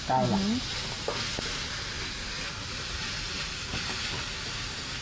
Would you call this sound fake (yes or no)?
no